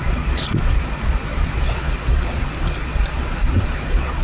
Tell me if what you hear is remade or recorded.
remade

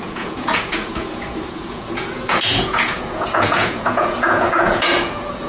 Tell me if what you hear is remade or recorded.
remade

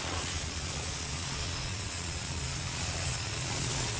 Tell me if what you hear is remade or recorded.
remade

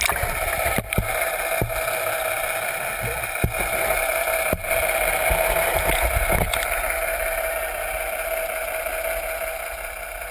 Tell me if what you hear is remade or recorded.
recorded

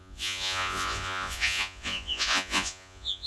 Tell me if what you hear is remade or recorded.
remade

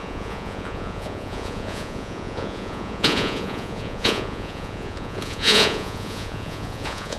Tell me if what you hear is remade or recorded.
remade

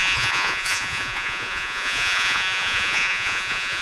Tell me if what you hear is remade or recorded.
remade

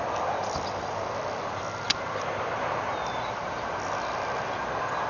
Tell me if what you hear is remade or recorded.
recorded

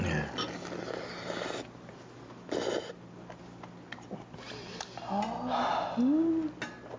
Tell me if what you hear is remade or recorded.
recorded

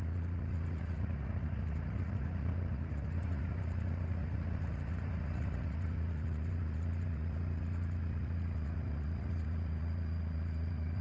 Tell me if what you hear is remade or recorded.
remade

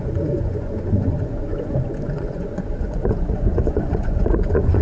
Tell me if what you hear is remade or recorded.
remade